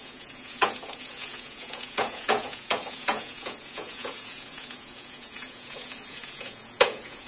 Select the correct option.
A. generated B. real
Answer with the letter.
A